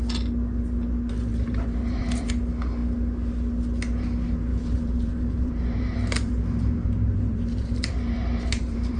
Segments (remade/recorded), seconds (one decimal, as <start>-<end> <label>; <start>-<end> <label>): 0.0-1.3 recorded; 1.3-2.3 remade; 2.3-4.5 recorded; 4.5-9.0 remade